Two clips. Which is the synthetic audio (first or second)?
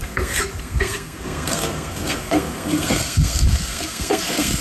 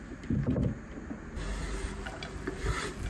first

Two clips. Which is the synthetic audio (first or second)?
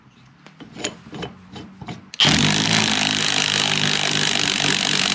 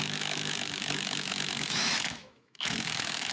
second